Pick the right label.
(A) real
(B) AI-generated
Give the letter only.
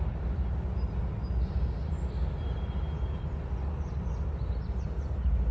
A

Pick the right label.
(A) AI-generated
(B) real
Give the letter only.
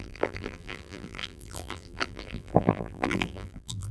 A